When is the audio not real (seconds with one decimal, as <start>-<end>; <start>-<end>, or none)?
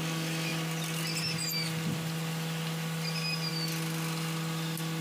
none